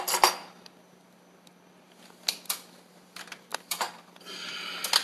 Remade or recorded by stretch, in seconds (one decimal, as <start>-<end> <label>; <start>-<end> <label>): 0.0-3.5 recorded; 3.5-4.2 remade; 4.2-5.0 recorded